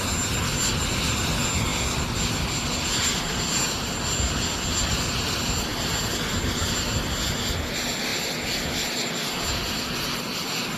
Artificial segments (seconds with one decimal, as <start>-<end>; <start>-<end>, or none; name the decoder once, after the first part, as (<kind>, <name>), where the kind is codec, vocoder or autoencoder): none